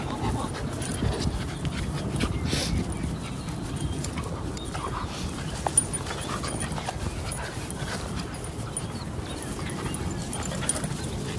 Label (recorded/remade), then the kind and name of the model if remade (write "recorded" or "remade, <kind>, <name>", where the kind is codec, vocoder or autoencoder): recorded